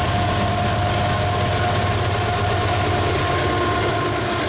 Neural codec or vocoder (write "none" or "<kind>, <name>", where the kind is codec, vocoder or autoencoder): none